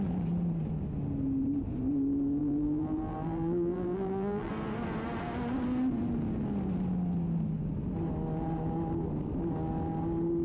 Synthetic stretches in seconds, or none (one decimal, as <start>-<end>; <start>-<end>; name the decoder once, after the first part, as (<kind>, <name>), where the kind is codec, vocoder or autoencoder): 2.4-4.5 (vocoder, BigVGAN v2)